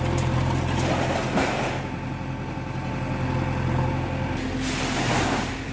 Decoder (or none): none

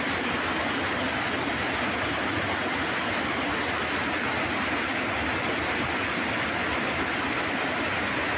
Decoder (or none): none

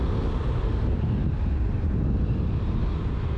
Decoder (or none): none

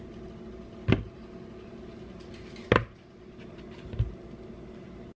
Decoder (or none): none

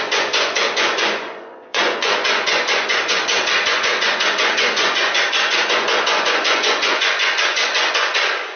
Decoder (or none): vocoder, Vocos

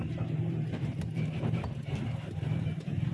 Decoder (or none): vocoder, BigVGAN v2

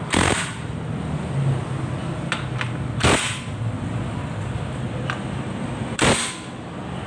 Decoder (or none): none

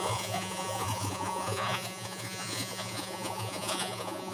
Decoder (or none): vocoder, Vocos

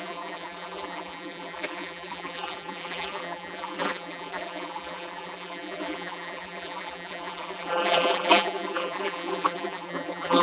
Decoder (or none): vocoder, BigVGAN v2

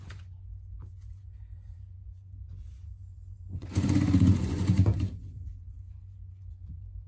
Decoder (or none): vocoder, Vocos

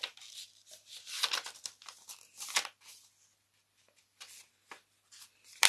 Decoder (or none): vocoder, BigVGAN v2